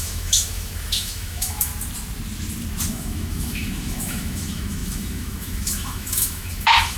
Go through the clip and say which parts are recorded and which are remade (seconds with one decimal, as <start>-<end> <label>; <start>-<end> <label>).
0.0-1.7 remade; 1.7-2.9 recorded; 2.9-7.0 remade